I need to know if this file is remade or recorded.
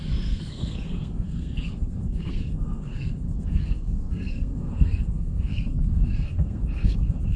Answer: remade